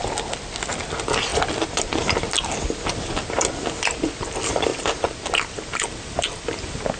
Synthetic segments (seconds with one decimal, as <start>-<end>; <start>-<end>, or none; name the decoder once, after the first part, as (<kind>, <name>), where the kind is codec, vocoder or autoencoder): none